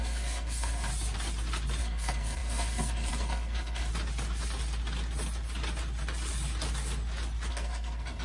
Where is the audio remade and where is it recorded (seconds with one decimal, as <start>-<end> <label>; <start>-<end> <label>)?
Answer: 0.0-0.9 remade; 0.9-1.8 recorded; 1.8-3.9 remade; 3.9-7.5 recorded; 7.5-8.2 remade